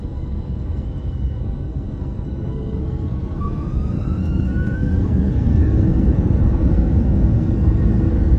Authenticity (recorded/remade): remade